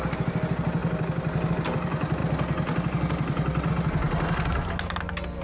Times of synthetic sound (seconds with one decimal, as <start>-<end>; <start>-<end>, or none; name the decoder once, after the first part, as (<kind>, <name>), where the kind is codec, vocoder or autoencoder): none